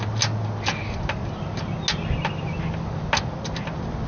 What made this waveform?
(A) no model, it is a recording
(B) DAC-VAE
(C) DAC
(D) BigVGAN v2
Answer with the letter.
A